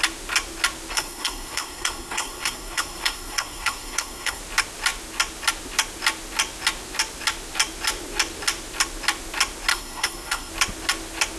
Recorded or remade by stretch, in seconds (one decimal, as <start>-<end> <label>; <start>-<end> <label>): 0.0-0.9 recorded; 0.9-4.4 remade; 4.4-9.7 recorded; 9.7-10.5 remade; 10.5-11.4 recorded